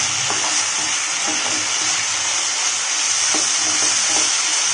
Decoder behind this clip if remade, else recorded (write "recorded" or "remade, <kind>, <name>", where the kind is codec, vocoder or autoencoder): recorded